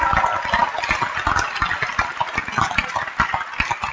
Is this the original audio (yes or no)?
yes